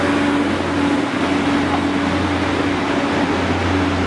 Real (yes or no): yes